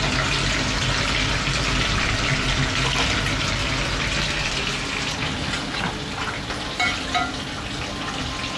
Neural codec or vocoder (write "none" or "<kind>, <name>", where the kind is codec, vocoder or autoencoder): none